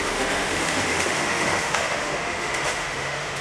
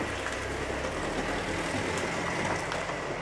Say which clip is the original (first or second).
second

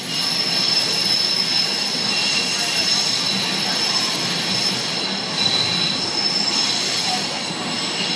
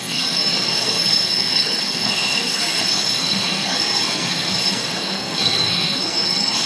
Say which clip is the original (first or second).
first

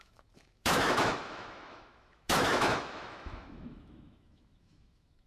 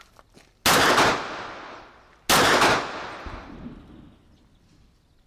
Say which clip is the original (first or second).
second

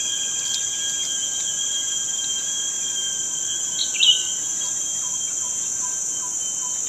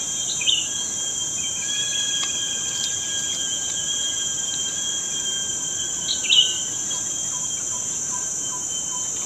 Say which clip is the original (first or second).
first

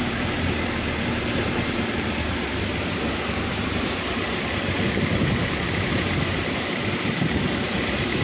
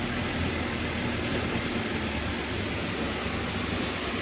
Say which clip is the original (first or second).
second